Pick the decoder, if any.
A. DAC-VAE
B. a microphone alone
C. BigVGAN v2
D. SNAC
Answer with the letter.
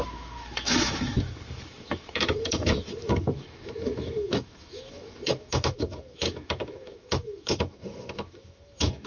A